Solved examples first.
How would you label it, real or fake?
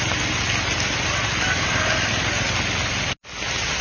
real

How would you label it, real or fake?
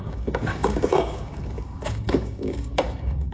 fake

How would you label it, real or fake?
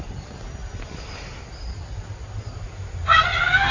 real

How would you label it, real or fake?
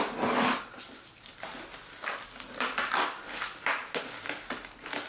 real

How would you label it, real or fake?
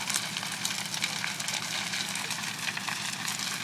real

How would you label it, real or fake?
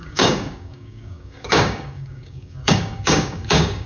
fake